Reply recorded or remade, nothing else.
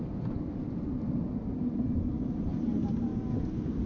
recorded